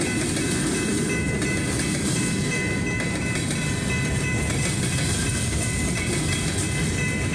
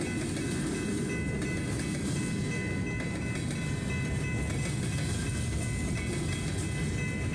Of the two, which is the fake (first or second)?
first